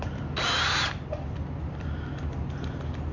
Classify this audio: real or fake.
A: real